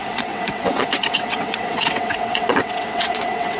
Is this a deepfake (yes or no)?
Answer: yes